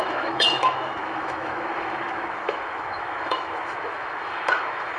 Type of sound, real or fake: fake